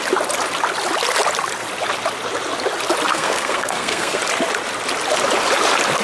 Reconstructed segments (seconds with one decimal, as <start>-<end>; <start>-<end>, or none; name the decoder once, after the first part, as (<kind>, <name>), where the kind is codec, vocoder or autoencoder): 3.1-4.2 (codec, SNAC)

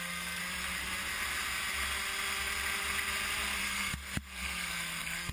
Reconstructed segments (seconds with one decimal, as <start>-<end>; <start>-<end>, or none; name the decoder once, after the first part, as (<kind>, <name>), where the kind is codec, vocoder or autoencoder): 0.0-0.4 (codec, SNAC); 3.6-5.3

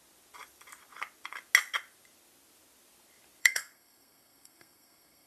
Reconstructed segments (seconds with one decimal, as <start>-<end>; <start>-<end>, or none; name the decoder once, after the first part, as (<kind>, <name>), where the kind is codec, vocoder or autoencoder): 3.4-5.3 (codec, SNAC)

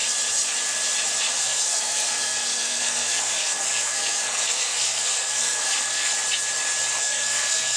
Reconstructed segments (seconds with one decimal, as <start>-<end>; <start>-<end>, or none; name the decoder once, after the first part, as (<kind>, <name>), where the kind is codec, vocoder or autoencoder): 1.3-6.1 (codec, SNAC); 7.0-7.8

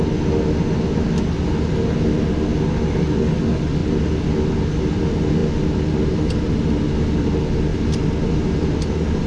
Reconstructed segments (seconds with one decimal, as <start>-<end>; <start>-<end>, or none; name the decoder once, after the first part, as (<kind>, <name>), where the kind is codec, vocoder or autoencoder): none